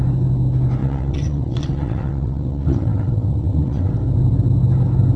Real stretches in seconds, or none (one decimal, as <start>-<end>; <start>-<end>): 0.0-0.8; 3.9-5.2